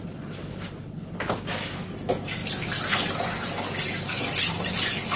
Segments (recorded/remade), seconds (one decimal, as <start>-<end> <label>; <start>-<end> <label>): 0.0-5.2 recorded